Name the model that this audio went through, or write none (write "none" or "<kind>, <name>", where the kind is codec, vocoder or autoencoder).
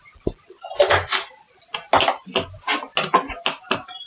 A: none